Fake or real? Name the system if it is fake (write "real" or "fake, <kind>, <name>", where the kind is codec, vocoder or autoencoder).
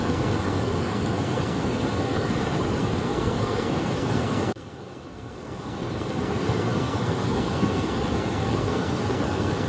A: fake, codec, SNAC